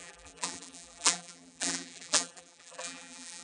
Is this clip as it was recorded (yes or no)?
no